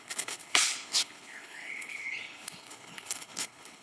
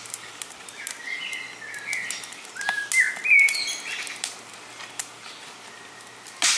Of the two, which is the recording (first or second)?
second